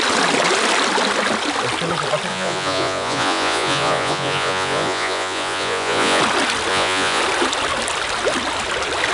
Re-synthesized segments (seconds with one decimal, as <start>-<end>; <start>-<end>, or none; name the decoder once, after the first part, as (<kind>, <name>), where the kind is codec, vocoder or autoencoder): 2.3-6.2 (vocoder, Vocos); 6.7-7.2